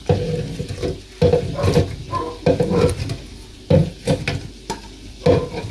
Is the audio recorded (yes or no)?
yes